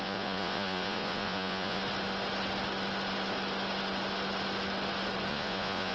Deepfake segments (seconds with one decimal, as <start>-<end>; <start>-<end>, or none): 0.0-1.8; 5.3-5.9